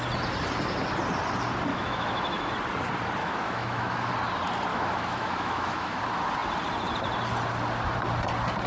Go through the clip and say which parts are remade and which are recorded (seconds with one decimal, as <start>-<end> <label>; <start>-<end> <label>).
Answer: 0.0-1.7 recorded; 1.7-2.5 remade; 2.5-3.2 recorded; 3.2-4.1 remade; 4.1-4.7 recorded; 4.7-6.0 remade; 6.0-8.7 recorded